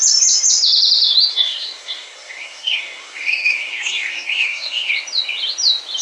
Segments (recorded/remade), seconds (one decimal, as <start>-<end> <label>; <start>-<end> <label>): 0.0-1.3 recorded; 1.3-4.9 remade; 4.9-6.0 recorded

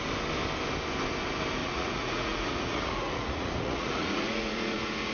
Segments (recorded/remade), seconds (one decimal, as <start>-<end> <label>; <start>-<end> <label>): 0.0-1.6 recorded; 1.6-5.1 remade

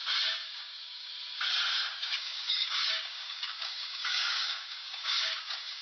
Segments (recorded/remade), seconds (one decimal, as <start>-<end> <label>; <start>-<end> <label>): 0.0-0.4 recorded; 0.4-1.1 remade; 1.1-1.9 recorded; 1.9-5.8 remade

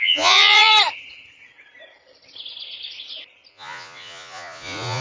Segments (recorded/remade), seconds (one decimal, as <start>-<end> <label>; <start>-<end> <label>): 0.0-0.7 remade; 0.7-3.5 recorded; 3.5-5.0 remade

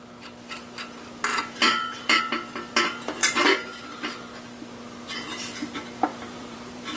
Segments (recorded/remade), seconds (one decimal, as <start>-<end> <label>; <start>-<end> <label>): 0.0-1.3 recorded; 1.3-2.2 remade; 2.2-3.2 recorded; 3.2-4.1 remade; 4.1-6.1 recorded; 6.1-7.0 remade

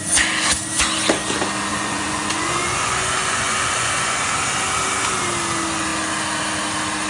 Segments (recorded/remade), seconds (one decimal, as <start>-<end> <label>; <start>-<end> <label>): 0.0-1.7 recorded; 1.7-4.3 remade; 4.3-7.1 recorded